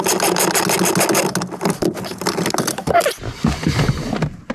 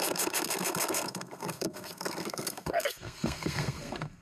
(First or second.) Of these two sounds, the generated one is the second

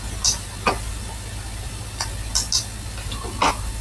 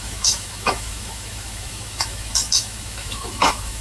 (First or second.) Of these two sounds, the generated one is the second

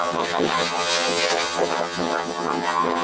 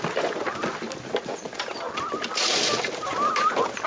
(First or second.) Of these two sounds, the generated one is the first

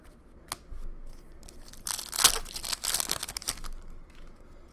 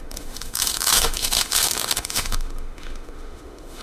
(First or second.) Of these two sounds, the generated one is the second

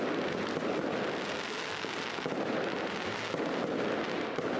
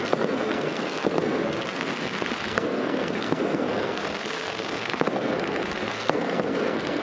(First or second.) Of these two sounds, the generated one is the second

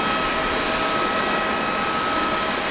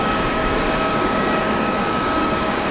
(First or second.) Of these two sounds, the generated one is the second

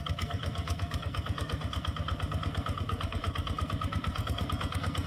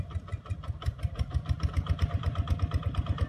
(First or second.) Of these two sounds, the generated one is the first